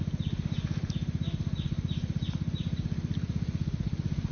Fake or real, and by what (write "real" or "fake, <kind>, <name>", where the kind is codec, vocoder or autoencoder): real